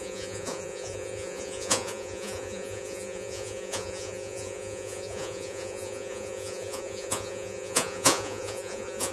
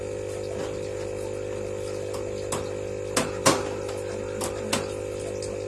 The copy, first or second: first